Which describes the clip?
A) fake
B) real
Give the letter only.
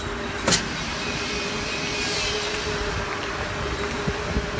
B